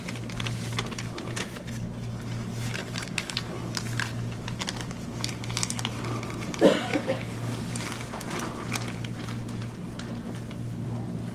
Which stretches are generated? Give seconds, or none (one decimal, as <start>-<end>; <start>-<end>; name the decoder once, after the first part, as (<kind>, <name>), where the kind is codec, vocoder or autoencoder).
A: 2.8-3.5 (codec, DAC); 6.9-7.7

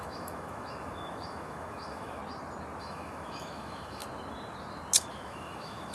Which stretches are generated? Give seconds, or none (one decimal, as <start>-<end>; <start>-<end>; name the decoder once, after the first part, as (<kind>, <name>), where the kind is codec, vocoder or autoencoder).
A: 0.0-2.2 (autoencoder, DAC-VAE); 2.8-4.0; 5.1-5.9

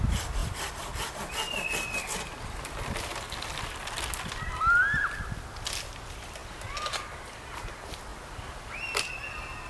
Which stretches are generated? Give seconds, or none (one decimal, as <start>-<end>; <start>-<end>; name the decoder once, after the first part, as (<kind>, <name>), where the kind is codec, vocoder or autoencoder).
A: none

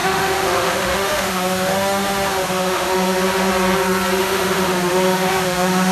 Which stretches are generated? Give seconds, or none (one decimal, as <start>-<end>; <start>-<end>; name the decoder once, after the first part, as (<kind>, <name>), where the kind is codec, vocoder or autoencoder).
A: 0.0-3.5 (autoencoder, DAC-VAE); 4.2-5.9

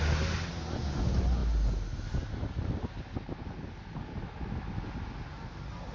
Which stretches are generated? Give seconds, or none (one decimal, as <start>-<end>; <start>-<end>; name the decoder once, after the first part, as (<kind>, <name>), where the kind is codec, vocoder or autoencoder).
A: none